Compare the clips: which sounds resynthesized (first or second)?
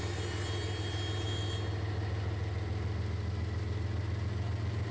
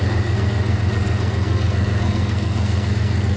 second